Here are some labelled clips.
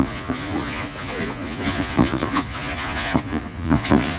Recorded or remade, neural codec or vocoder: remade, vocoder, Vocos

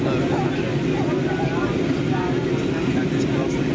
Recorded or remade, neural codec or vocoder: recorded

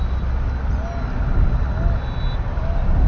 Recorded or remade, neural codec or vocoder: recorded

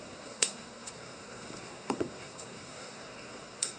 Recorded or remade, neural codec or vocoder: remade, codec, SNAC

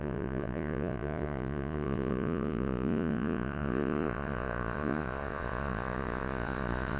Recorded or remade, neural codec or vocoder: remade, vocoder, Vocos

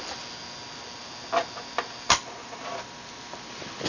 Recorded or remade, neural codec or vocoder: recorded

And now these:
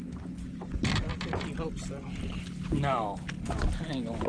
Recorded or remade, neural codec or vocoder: recorded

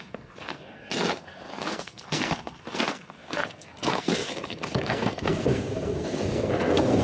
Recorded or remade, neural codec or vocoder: remade, codec, SNAC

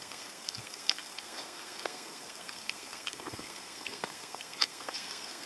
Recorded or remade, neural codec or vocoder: remade, codec, SNAC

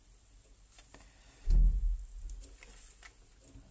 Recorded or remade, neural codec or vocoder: recorded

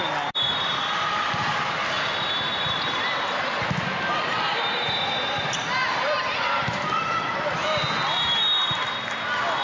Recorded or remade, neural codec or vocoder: recorded